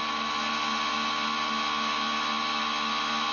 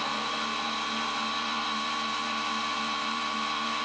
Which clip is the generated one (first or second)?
second